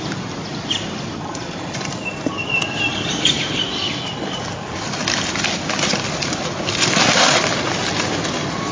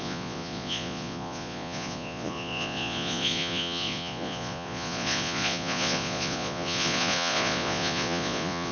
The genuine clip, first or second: first